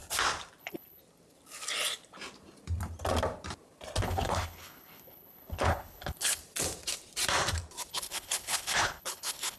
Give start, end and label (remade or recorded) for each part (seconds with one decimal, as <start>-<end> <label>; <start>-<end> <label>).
0.0-0.6 recorded; 0.6-1.0 remade; 1.0-4.0 recorded; 4.0-6.4 remade; 6.4-7.9 recorded; 7.9-9.6 remade

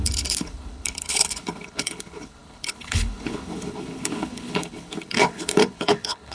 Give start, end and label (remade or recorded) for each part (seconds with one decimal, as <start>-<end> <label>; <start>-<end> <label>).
0.0-6.3 remade

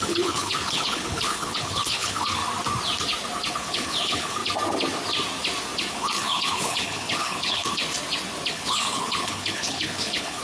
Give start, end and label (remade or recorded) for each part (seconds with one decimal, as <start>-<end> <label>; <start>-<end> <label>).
0.0-2.4 remade; 2.4-3.5 recorded; 3.5-4.4 remade; 4.4-5.9 recorded; 5.9-7.8 remade; 7.8-8.5 recorded; 8.5-10.4 remade

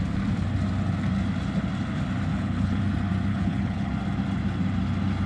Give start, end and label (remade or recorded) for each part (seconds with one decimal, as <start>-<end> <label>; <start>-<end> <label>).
0.0-2.3 recorded; 2.3-2.8 remade; 2.8-3.3 recorded; 3.3-3.9 remade; 3.9-5.3 recorded